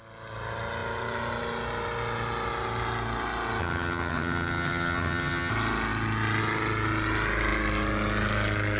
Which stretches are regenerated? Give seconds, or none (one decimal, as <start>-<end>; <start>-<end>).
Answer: 3.6-5.5